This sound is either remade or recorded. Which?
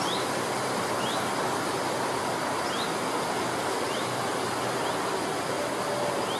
recorded